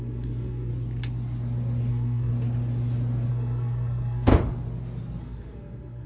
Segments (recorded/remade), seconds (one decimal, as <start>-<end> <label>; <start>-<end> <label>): 0.0-0.7 remade; 0.7-1.9 recorded; 1.9-2.3 remade; 2.3-3.3 recorded; 3.3-4.3 remade; 4.3-5.2 recorded; 5.2-6.1 remade